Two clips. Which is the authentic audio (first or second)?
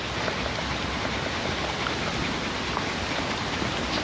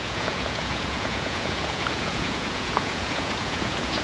first